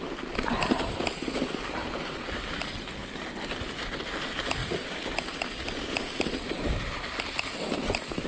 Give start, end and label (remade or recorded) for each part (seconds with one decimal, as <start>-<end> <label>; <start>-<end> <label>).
0.0-3.0 recorded; 3.0-3.6 remade; 3.6-4.6 recorded; 4.6-5.2 remade; 5.2-8.3 recorded